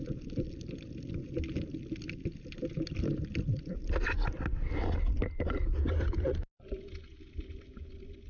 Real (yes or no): yes